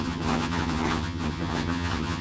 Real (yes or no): no